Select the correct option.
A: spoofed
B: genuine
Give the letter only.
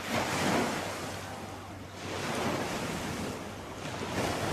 B